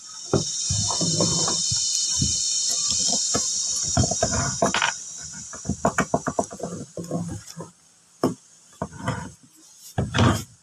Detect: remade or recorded recorded